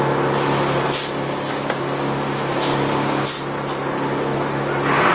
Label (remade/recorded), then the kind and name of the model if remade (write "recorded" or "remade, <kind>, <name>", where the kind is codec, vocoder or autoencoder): recorded